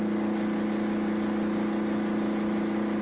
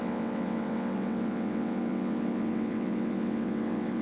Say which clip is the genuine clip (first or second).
first